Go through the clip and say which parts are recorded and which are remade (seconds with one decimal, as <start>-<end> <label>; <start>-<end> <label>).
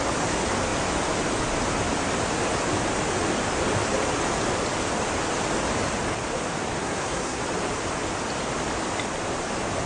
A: 0.0-6.8 recorded; 6.8-7.4 remade; 7.4-9.9 recorded